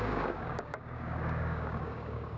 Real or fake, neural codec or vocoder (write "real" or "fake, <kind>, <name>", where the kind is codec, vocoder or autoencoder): fake, codec, DAC